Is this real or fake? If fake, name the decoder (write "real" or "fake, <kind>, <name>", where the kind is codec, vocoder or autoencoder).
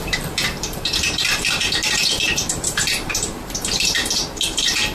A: fake, vocoder, BigVGAN v2